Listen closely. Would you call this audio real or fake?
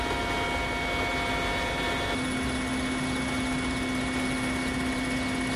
real